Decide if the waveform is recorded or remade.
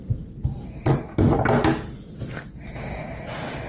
recorded